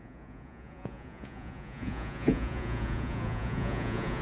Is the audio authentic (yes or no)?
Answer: no